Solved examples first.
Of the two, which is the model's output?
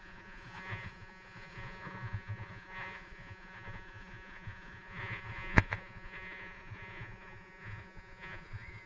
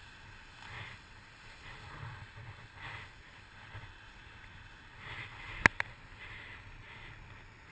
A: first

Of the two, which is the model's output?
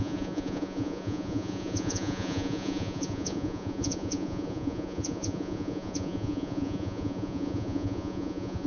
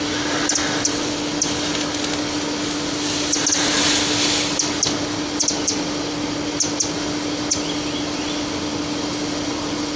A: first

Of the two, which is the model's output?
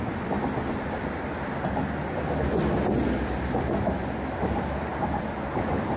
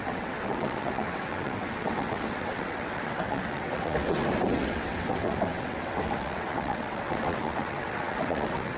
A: second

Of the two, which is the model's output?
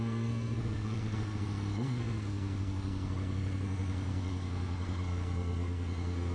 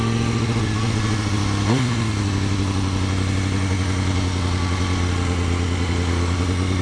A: first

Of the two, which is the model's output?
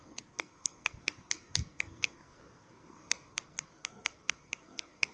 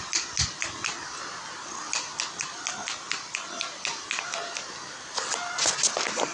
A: first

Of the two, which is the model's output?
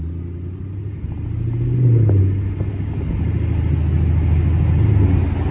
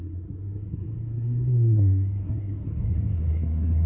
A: second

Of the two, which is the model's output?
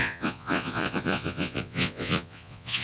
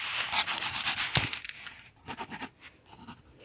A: first